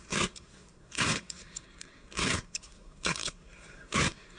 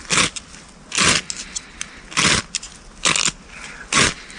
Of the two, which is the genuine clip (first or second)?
second